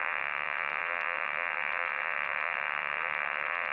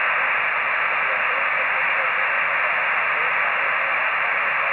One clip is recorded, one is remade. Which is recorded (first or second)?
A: second